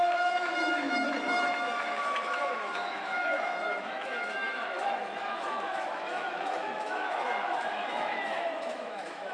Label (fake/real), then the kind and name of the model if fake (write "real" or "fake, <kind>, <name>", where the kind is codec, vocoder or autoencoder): fake, autoencoder, DAC-VAE